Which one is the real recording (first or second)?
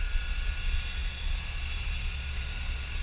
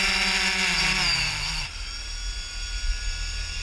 second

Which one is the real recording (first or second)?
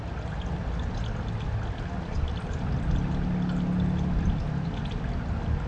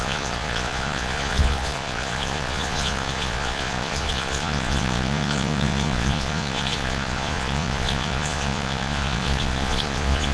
first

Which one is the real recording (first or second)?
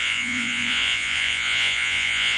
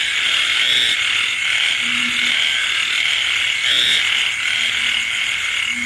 second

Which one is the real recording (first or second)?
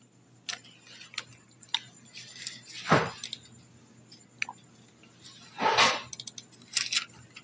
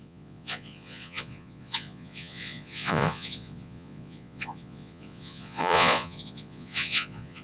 first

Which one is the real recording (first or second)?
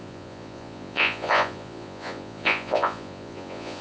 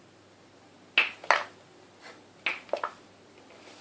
second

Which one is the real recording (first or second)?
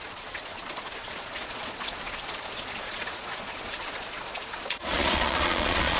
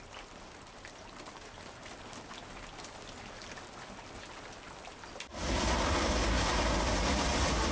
second